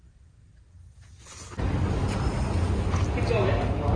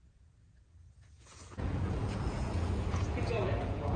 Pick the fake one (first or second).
second